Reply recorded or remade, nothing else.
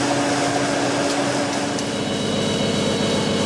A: recorded